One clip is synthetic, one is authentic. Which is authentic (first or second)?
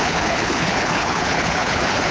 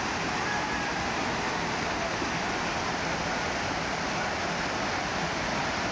second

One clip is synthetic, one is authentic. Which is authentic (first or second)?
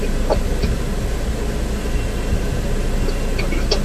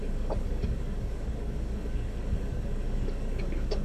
first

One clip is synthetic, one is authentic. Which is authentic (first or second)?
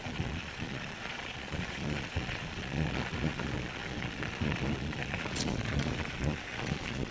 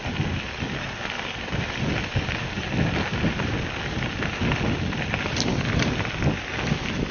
second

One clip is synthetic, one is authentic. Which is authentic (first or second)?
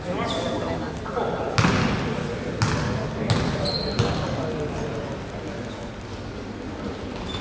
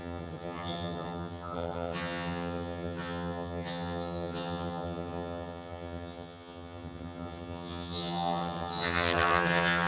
first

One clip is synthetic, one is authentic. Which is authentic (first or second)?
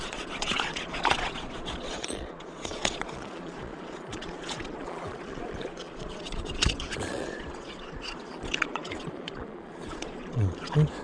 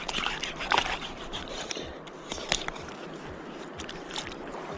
second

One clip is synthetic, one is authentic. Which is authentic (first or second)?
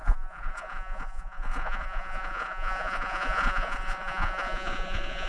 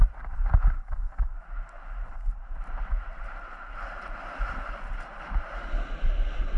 second